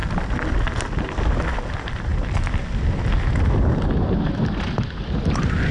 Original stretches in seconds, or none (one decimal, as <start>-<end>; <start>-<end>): 0.0-5.7